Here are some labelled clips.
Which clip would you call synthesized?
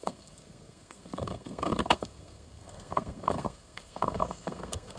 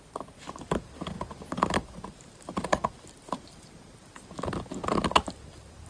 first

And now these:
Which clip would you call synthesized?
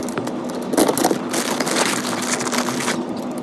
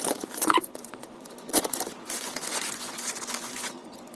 second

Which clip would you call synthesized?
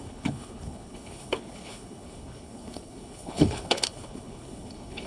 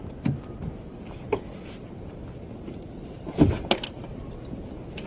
first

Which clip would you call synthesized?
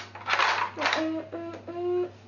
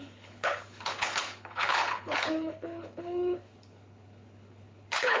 second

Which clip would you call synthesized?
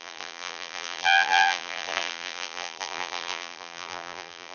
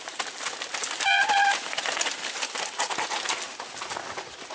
first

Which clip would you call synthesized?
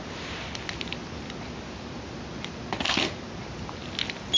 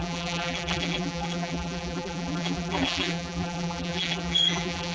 second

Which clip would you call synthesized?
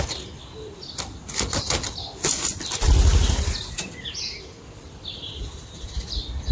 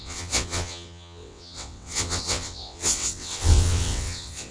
second